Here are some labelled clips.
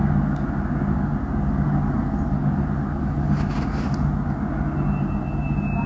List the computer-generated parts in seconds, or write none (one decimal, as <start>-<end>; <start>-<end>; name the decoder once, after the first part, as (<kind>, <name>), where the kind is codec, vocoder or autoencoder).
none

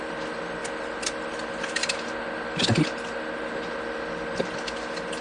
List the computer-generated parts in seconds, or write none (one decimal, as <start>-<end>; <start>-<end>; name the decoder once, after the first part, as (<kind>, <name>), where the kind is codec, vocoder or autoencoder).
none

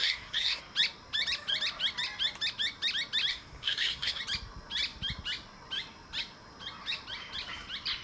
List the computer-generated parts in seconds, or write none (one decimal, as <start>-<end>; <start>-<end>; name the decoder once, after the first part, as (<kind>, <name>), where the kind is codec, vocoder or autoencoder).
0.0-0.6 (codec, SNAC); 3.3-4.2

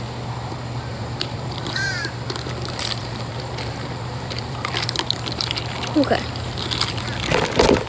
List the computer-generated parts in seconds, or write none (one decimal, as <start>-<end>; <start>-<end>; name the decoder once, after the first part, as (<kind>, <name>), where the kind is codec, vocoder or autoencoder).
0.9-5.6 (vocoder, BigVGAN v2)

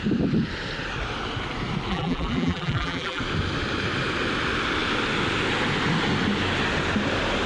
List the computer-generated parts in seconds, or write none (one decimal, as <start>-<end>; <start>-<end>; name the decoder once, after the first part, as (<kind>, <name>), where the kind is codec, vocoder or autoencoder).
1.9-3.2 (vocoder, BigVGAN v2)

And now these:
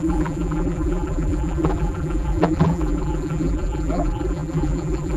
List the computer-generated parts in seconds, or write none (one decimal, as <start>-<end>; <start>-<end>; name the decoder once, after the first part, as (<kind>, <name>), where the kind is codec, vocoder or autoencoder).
0.0-5.2 (vocoder, BigVGAN v2)

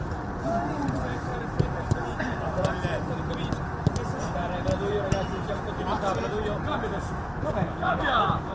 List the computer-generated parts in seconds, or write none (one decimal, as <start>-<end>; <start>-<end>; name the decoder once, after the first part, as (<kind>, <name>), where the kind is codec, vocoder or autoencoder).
6.7-8.5 (autoencoder, DAC-VAE)

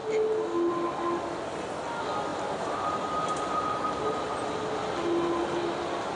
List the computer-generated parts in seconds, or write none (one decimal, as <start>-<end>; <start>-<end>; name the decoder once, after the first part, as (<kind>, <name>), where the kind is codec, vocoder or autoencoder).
2.3-3.5 (vocoder, BigVGAN v2); 5.4-6.2